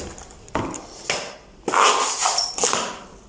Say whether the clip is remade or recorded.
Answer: recorded